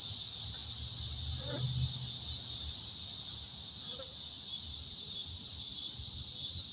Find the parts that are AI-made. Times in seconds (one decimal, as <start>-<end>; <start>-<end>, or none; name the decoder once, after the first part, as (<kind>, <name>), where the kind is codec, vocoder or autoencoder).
none